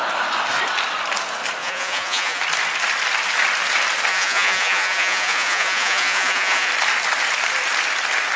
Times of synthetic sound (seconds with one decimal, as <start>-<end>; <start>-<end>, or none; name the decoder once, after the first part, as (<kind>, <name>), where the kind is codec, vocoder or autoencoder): 1.6-2.4 (vocoder, Vocos); 4.1-6.7